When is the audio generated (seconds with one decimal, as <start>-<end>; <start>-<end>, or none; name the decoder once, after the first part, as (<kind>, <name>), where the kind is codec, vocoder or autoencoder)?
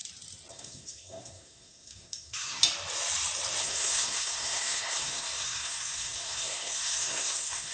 0.5-2.6 (codec, SNAC); 3.6-7.7